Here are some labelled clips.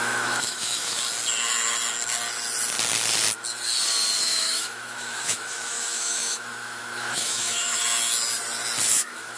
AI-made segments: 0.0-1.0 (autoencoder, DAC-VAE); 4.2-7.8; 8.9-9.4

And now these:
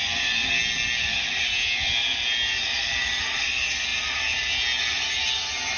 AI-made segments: none

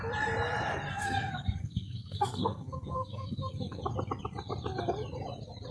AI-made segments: 0.9-3.8 (codec, SNAC)